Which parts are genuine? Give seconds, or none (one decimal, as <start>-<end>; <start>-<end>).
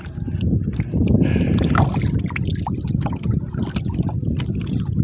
0.0-5.0